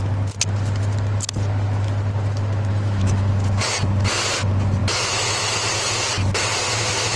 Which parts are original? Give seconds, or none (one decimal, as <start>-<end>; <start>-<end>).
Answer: 0.0-2.7; 3.3-7.2

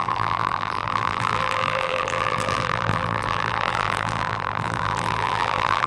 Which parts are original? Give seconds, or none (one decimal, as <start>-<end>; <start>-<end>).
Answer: none

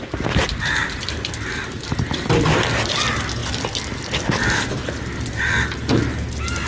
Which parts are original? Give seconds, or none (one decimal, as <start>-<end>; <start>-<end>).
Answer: 0.0-6.7

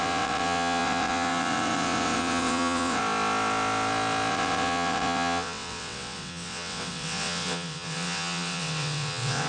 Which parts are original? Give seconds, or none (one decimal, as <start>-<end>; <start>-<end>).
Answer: 3.0-4.3

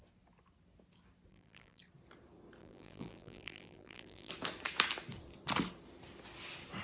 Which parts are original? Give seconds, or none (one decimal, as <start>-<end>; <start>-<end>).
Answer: 0.0-1.3; 1.8-2.6; 4.3-6.8

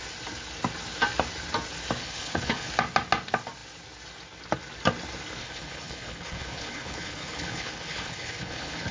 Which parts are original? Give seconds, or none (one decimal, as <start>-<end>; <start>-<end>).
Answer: 0.0-2.0; 2.7-5.4

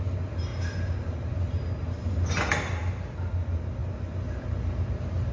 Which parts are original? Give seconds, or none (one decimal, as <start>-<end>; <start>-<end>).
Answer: 0.0-5.3